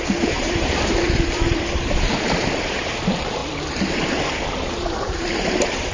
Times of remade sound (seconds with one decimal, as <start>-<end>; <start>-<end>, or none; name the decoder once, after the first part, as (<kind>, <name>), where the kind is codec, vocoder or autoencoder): 0.0-3.4 (vocoder, BigVGAN v2); 4.7-5.9